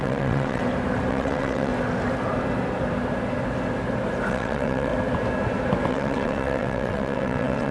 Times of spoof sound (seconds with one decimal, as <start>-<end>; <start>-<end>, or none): 0.0-0.6; 1.1-1.7; 4.3-4.9; 5.9-7.7